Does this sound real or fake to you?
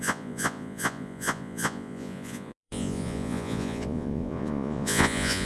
fake